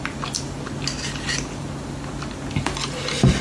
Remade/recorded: recorded